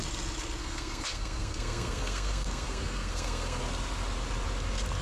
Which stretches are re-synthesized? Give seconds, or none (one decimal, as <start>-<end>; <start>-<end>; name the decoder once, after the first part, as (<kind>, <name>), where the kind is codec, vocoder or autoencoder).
0.6-3.6 (codec, SNAC)